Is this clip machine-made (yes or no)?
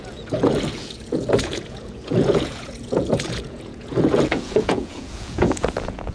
yes